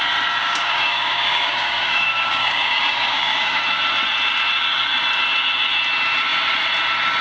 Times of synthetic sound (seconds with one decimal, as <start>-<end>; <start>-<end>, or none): 0.4-3.6